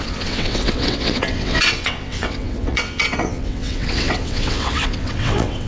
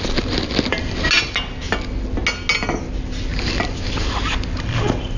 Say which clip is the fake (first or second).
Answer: first